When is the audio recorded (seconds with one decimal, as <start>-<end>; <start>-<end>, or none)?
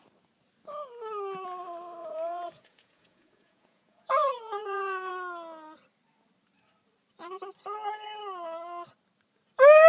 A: 0.0-2.0; 5.1-9.9